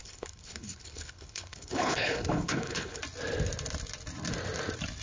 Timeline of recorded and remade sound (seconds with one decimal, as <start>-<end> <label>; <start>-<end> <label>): 0.0-3.0 remade; 3.0-5.0 recorded

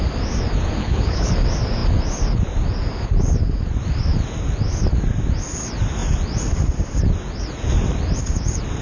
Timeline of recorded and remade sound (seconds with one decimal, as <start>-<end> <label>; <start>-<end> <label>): 0.0-0.8 recorded; 0.8-1.3 remade; 1.3-8.8 recorded

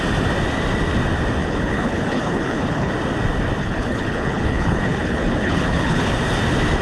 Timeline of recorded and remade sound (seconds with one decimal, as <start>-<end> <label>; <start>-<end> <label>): 0.0-1.4 recorded; 1.4-2.9 remade; 2.9-3.6 recorded; 3.6-6.1 remade; 6.1-6.8 recorded

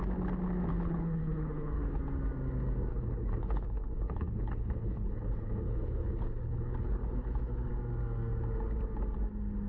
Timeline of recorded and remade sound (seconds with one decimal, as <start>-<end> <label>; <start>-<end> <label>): 0.0-0.7 recorded; 0.7-2.0 remade; 2.0-2.9 recorded; 2.9-7.7 remade; 7.7-9.7 recorded

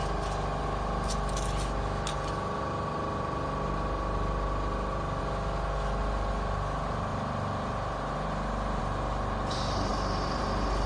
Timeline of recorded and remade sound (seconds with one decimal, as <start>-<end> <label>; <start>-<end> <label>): 0.0-10.9 recorded